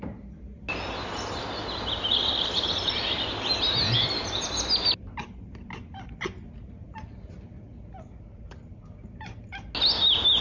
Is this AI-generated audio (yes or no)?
no